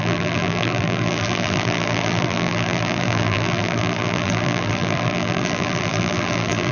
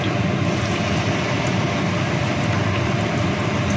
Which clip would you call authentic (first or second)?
second